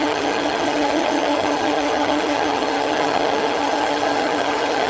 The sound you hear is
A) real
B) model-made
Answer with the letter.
B